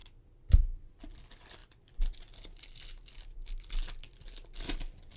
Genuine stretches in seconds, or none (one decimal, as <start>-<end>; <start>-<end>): 0.0-5.2